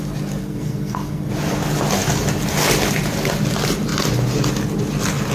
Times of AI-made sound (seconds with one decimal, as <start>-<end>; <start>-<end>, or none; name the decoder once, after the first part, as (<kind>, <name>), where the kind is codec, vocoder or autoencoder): 0.4-1.3 (codec, SNAC)